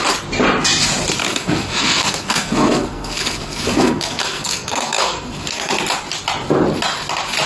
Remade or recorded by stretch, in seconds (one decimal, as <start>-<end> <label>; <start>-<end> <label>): 0.0-1.2 recorded; 1.2-5.7 remade; 5.7-7.5 recorded